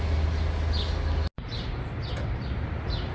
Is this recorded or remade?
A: recorded